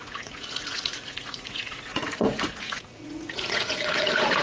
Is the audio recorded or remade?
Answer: remade